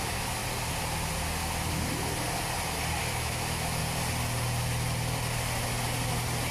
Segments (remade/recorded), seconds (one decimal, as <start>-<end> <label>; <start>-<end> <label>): 0.0-0.4 remade; 0.4-3.0 recorded; 3.0-3.8 remade; 3.8-6.5 recorded